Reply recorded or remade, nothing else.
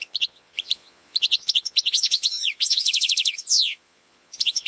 remade